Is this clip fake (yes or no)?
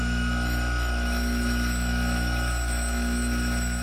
yes